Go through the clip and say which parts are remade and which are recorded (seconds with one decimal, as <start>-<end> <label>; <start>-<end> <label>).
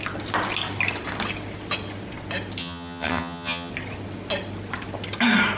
0.0-2.6 recorded; 2.6-3.7 remade; 3.7-5.6 recorded